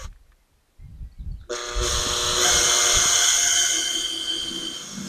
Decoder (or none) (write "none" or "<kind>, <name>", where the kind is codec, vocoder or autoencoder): none